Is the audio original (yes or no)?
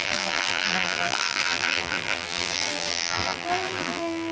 no